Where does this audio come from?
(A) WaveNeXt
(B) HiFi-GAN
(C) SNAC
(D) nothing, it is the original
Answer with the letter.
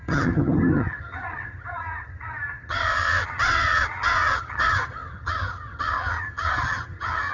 B